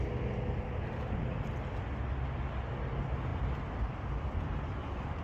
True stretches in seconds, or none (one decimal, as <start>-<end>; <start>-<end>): 0.0-5.2